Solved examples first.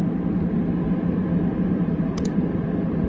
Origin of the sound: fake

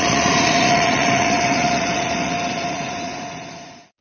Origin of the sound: fake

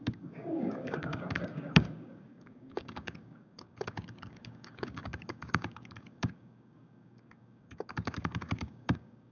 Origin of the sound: fake